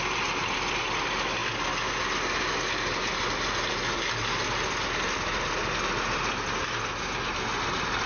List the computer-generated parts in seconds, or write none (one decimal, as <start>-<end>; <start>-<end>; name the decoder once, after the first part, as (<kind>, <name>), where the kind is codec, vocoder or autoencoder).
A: none